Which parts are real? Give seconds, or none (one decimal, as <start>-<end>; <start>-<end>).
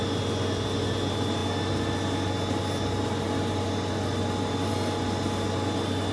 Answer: 0.0-6.1